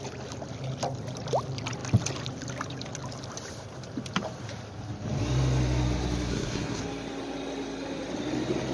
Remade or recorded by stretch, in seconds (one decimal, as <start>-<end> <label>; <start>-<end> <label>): 0.0-6.3 recorded; 6.3-6.8 remade; 6.8-8.7 recorded